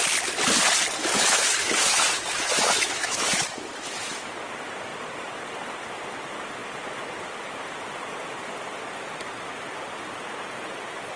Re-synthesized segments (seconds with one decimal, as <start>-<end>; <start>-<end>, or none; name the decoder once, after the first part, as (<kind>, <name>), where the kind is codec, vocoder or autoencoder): 1.0-4.3 (autoencoder, DAC-VAE)